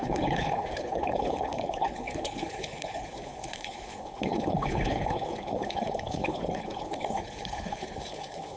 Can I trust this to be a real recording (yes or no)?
no